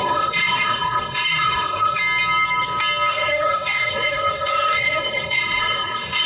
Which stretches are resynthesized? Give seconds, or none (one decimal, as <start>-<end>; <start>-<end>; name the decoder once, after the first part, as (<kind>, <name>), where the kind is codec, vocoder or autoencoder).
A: 0.0-2.0 (codec, SNAC); 3.1-6.3